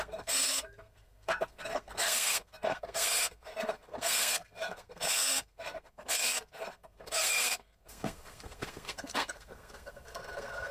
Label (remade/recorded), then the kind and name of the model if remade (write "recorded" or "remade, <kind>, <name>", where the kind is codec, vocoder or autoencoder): remade, codec, SNAC